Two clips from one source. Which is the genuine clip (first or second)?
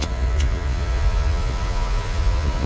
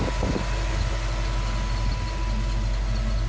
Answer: second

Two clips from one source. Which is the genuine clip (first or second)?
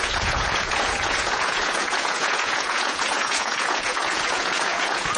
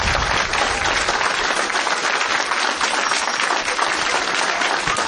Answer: second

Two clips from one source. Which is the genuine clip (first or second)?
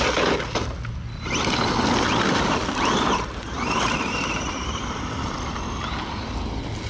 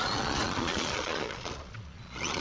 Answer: first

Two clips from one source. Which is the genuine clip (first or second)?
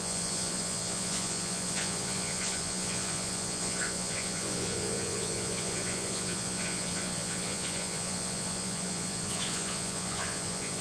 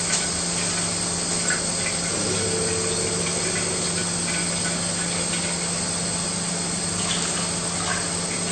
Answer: second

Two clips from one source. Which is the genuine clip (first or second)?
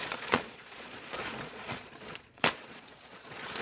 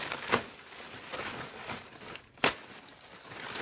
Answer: second